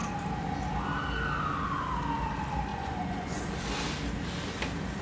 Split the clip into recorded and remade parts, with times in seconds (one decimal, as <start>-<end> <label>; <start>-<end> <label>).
0.0-2.7 recorded; 2.7-3.4 remade; 3.4-5.0 recorded